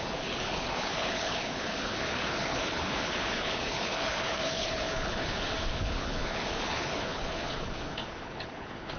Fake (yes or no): yes